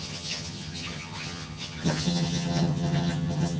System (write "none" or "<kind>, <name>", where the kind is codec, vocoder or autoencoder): vocoder, HiFi-GAN